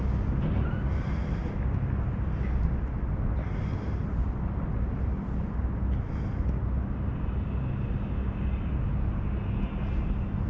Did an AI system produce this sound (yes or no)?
no